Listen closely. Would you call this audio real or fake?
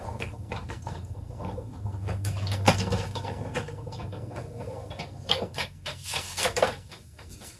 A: fake